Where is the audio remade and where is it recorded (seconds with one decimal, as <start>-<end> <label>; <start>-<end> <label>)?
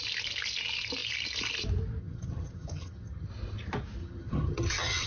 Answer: 0.0-2.0 recorded; 2.0-3.3 remade; 3.3-4.0 recorded; 4.0-5.1 remade